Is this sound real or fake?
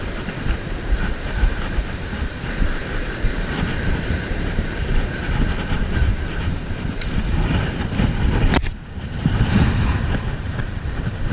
fake